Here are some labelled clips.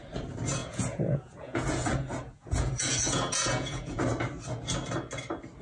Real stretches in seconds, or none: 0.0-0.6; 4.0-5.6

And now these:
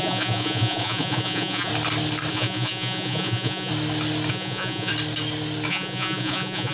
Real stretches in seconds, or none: 1.7-2.3; 3.7-4.3; 4.9-5.7